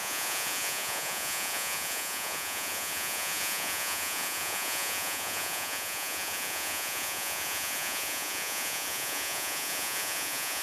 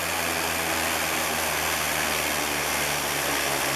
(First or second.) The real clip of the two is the second